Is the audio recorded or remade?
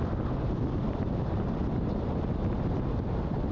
recorded